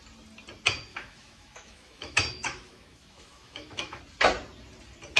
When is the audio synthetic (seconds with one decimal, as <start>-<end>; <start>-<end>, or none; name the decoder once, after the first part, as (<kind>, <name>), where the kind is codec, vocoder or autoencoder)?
0.9-4.0 (autoencoder, DAC-VAE)